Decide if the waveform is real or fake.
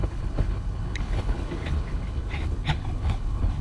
fake